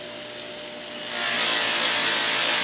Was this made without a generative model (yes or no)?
yes